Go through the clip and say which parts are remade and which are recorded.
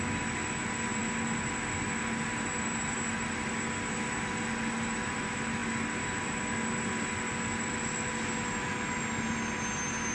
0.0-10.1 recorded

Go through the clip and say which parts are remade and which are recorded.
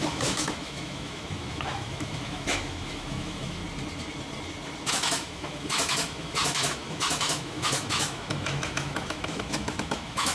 0.0-3.6 remade; 3.6-4.9 recorded; 4.9-10.3 remade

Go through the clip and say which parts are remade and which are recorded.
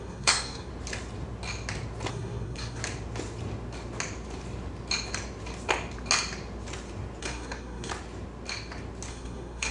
0.0-0.7 remade; 0.7-2.1 recorded; 2.1-2.8 remade; 2.8-7.2 recorded; 7.2-7.9 remade; 7.9-9.1 recorded; 9.1-9.7 remade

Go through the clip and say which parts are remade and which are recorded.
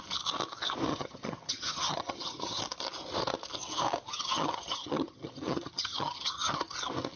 0.0-0.9 recorded; 0.9-2.6 remade; 2.6-4.1 recorded; 4.1-6.6 remade; 6.6-7.2 recorded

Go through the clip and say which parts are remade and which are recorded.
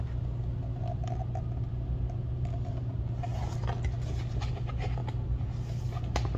0.0-6.4 recorded